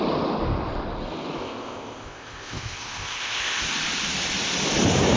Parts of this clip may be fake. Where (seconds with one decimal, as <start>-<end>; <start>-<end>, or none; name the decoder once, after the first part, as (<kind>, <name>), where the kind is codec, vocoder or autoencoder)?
1.4-3.6 (codec, ZipCodec)